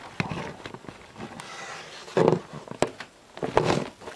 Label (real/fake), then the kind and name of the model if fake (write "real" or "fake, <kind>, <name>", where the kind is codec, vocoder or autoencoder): real